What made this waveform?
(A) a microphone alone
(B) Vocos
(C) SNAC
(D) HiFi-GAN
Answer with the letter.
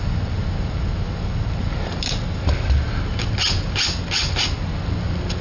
A